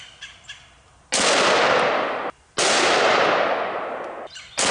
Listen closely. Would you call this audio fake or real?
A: real